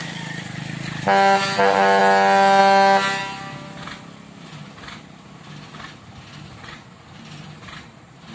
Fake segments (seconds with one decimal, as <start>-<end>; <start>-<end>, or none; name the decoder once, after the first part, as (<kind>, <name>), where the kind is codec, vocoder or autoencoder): none